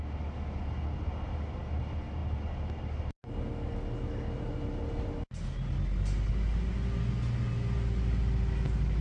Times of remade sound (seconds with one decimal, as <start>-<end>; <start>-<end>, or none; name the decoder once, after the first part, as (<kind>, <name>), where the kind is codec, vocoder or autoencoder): none

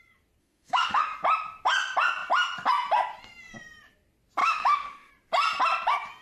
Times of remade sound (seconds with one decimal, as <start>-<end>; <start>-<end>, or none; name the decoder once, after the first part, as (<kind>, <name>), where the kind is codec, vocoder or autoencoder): 0.4-1.0 (autoencoder, DAC-VAE); 4.4-5.1

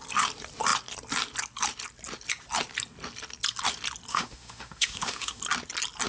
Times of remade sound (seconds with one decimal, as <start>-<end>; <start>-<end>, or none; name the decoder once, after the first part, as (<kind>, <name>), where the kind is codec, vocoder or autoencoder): 4.1-5.4 (autoencoder, DAC-VAE)

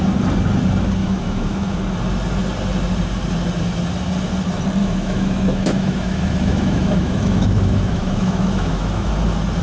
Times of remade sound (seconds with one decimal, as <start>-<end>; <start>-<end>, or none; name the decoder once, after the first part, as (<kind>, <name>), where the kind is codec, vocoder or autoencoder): 1.0-1.8 (autoencoder, DAC-VAE); 4.8-9.1